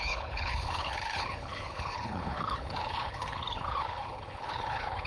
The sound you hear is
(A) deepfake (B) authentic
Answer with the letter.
A